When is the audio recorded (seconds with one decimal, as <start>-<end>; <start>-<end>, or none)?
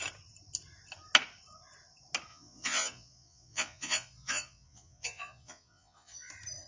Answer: 0.0-2.3; 6.3-6.7